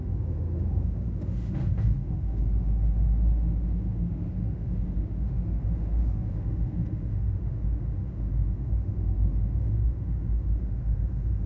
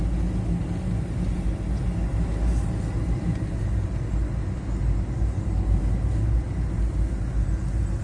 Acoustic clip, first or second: second